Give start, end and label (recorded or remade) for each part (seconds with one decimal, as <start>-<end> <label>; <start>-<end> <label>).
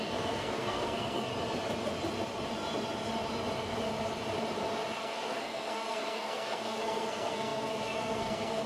0.0-1.3 remade; 1.3-5.0 recorded; 5.0-8.7 remade